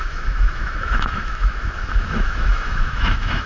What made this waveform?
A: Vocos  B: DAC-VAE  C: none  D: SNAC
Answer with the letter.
B